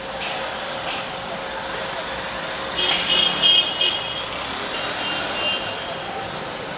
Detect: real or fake real